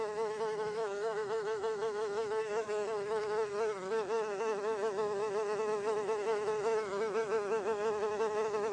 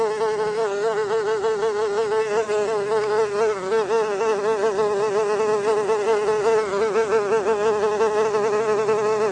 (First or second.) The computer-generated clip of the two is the first